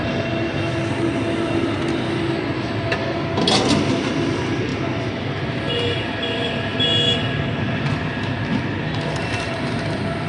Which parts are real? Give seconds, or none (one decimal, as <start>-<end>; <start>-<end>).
0.0-10.3